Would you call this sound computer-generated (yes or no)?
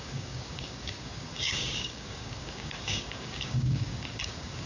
yes